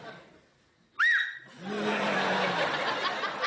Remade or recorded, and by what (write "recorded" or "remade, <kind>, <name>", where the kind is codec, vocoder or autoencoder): recorded